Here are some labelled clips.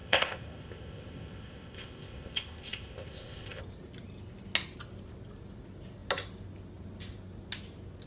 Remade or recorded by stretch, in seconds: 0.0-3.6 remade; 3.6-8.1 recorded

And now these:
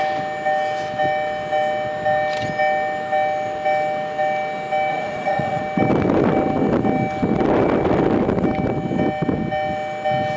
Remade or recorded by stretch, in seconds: 0.0-4.9 recorded; 4.9-5.6 remade; 5.6-10.4 recorded

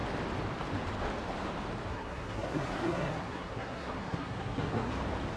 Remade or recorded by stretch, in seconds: 0.0-1.9 recorded; 1.9-4.9 remade; 4.9-5.4 recorded

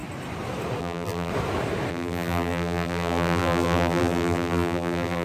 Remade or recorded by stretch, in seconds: 0.0-0.8 recorded; 0.8-1.3 remade; 1.3-1.9 recorded; 1.9-5.2 remade

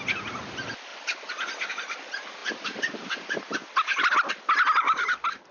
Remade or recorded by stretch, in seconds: 0.0-5.5 recorded

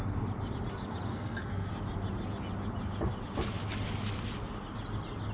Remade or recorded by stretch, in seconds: 0.0-1.1 recorded; 1.1-1.7 remade; 1.7-5.3 recorded

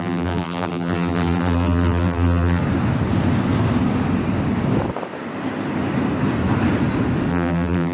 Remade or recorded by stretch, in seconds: 0.0-2.6 remade; 2.6-7.3 recorded; 7.3-7.9 remade

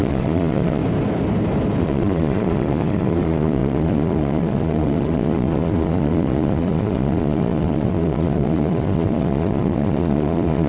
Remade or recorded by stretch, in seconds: 0.0-0.8 remade; 0.8-1.8 recorded; 1.8-10.7 remade